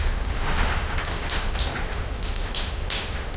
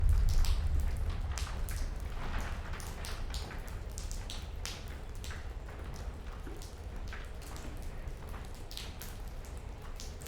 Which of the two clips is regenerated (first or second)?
first